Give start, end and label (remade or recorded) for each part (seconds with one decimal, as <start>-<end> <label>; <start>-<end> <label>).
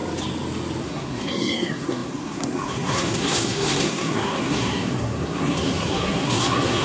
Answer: 0.0-0.8 recorded; 0.8-6.8 remade